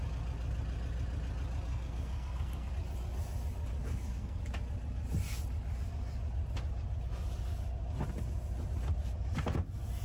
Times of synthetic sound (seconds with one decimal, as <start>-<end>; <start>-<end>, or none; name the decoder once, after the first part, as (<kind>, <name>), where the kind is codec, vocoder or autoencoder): 1.7-2.7 (codec, SNAC); 3.9-4.4